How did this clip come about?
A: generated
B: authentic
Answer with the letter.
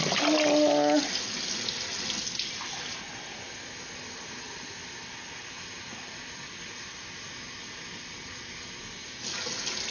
B